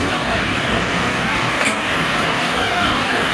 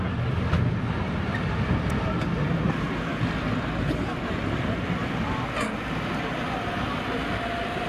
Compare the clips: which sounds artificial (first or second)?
first